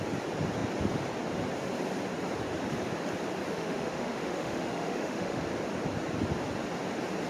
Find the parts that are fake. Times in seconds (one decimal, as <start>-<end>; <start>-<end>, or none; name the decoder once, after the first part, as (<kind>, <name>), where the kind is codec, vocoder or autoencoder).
3.5-5.4 (autoencoder, DAC-VAE)